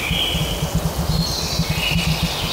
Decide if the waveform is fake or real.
real